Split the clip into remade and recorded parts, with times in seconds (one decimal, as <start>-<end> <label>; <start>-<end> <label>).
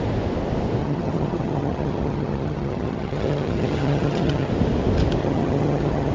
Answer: 0.0-0.8 recorded; 0.8-4.5 remade; 4.5-5.2 recorded; 5.2-6.1 remade